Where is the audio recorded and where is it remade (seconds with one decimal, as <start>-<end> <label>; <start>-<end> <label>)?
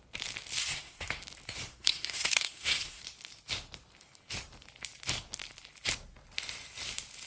0.0-0.6 recorded; 0.6-1.1 remade; 1.1-1.7 recorded; 1.7-3.0 remade; 3.0-7.3 recorded